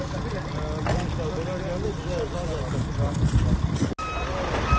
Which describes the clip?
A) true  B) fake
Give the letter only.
A